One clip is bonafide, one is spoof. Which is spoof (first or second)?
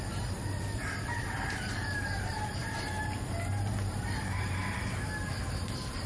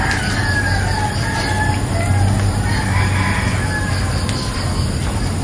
first